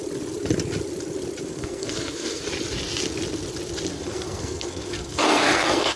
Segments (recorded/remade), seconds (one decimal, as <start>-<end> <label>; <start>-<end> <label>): 0.0-1.5 recorded; 1.5-2.4 remade; 2.4-3.9 recorded; 3.9-6.0 remade